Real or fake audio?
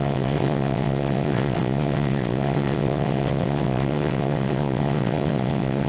fake